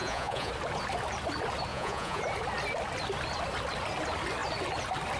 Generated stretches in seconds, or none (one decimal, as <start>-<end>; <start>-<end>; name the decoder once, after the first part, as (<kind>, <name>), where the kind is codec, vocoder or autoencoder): 0.0-0.5 (vocoder, Vocos); 1.7-2.2